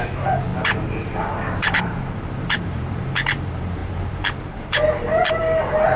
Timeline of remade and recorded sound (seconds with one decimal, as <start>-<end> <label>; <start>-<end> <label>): 0.0-6.0 remade